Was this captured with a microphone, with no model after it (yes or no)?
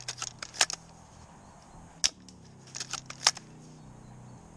yes